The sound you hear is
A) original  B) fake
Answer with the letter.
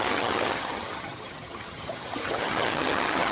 B